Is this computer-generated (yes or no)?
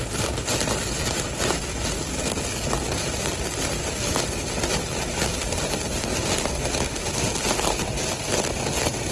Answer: no